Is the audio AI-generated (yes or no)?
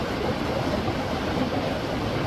no